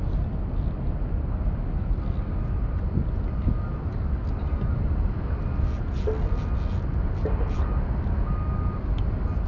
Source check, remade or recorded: recorded